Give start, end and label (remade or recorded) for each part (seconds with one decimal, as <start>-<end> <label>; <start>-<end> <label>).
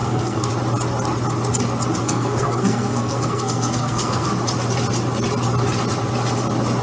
0.0-0.5 remade; 0.5-2.0 recorded; 2.0-4.3 remade; 4.3-6.8 recorded